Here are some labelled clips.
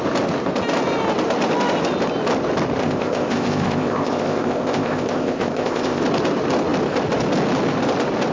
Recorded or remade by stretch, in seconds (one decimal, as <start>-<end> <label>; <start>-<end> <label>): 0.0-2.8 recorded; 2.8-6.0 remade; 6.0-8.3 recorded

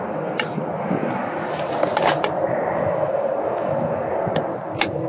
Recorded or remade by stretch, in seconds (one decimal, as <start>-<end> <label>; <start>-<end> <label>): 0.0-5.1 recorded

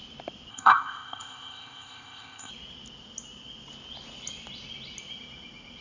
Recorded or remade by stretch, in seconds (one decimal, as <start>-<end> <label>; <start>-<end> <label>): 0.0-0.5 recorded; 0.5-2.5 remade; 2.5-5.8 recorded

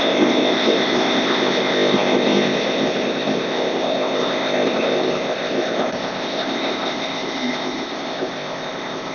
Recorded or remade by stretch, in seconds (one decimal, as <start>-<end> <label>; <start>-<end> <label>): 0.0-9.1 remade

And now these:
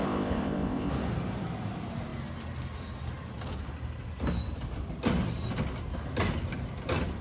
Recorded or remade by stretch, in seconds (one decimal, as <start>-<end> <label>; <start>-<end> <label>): 0.0-0.9 remade; 0.9-7.2 recorded

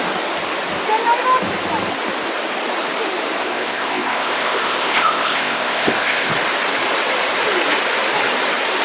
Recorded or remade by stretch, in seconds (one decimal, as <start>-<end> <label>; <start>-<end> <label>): 0.0-3.4 recorded; 3.4-6.3 remade; 6.3-8.8 recorded

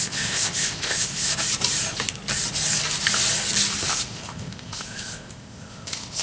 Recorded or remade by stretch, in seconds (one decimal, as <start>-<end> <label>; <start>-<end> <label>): 0.0-1.3 remade; 1.3-3.9 recorded; 3.9-6.2 remade

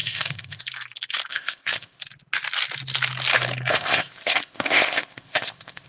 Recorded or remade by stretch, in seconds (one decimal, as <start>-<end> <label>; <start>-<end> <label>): 0.0-0.6 remade; 0.6-1.3 recorded; 1.3-2.0 remade; 2.0-3.7 recorded; 3.7-5.9 remade